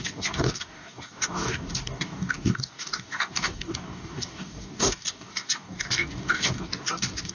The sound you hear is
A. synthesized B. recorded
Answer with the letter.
A